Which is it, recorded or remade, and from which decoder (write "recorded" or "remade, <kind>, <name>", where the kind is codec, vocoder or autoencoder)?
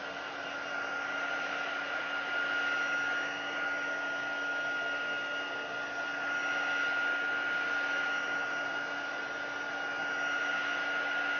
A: recorded